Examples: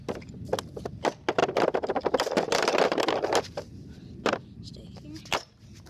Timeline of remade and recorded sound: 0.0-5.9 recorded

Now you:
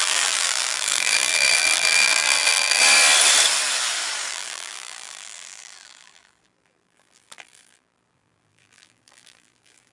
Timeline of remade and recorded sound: 0.0-2.8 remade; 2.8-4.3 recorded; 4.3-9.9 remade

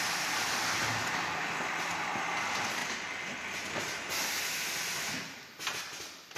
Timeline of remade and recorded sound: 0.0-6.4 recorded

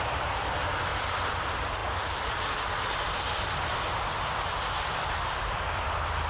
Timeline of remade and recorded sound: 0.0-0.9 remade; 0.9-1.4 recorded; 1.4-6.3 remade

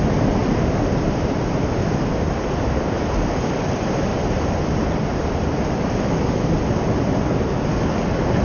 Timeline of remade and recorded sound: 0.0-0.4 recorded; 0.4-3.1 remade; 3.1-4.1 recorded; 4.1-4.6 remade; 4.6-8.4 recorded

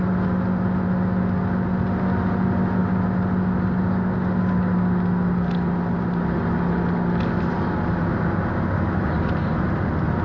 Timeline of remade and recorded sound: 0.0-10.2 recorded

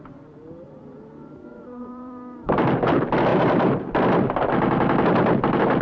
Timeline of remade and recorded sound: 0.0-1.5 recorded; 1.5-2.7 remade; 2.7-3.3 recorded; 3.3-4.0 remade; 4.0-5.8 recorded